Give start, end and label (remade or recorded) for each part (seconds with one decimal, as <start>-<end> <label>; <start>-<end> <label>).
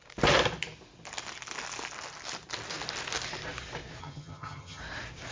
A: 0.0-4.0 recorded; 4.0-4.8 remade; 4.8-5.3 recorded